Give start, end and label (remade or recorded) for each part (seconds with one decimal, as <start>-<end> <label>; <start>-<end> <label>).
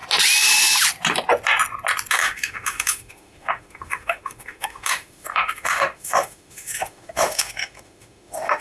0.0-2.1 recorded; 2.1-8.6 remade